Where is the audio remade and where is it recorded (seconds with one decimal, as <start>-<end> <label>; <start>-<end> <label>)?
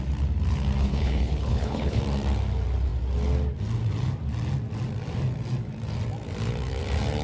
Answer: 0.0-0.8 recorded; 0.8-2.0 remade; 2.0-7.2 recorded